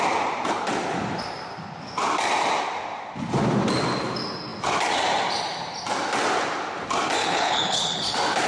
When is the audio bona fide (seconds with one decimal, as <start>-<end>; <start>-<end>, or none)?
0.0-7.2; 8.0-8.5